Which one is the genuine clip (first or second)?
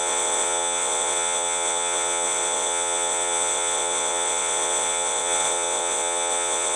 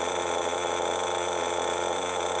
second